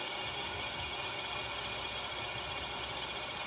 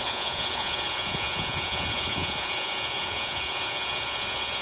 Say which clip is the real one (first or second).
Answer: first